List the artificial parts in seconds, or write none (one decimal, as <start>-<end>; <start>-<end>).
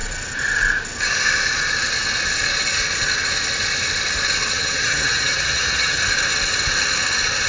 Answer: 4.5-6.0